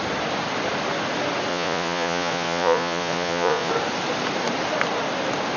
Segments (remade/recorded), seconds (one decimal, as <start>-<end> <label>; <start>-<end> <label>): 0.0-1.5 recorded; 1.5-3.7 remade; 3.7-5.6 recorded